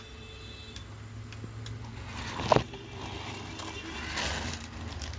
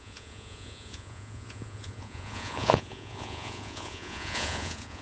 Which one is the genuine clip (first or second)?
first